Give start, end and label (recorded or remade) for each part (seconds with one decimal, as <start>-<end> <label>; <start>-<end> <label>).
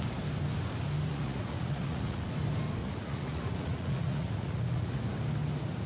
0.0-1.1 recorded; 1.1-2.2 remade; 2.2-2.8 recorded; 2.8-5.0 remade; 5.0-5.9 recorded